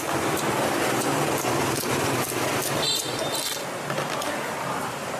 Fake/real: real